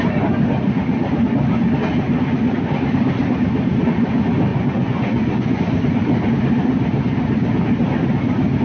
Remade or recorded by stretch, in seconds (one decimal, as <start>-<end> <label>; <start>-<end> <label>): 0.0-4.5 recorded; 4.5-5.6 remade; 5.6-8.6 recorded